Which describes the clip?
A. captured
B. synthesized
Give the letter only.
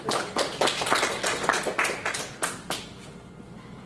A